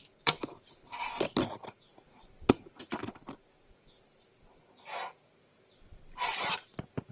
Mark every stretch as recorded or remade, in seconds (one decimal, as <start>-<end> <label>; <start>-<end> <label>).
0.0-3.0 recorded; 3.0-4.6 remade; 4.6-7.1 recorded